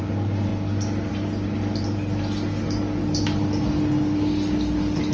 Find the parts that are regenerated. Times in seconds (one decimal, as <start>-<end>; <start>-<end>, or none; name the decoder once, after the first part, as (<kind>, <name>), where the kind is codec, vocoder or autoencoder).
none